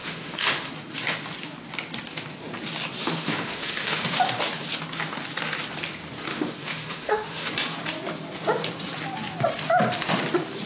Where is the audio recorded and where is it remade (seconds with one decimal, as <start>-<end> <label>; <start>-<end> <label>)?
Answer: 0.0-0.7 remade; 0.7-3.0 recorded; 3.0-4.3 remade; 4.3-6.3 recorded; 6.3-7.5 remade; 7.5-10.7 recorded